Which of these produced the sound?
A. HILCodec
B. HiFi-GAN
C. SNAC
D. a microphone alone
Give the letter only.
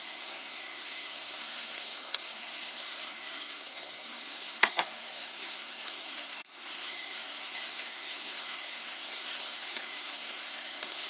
C